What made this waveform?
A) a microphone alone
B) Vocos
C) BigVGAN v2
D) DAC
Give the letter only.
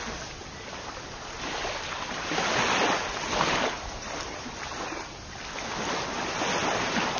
A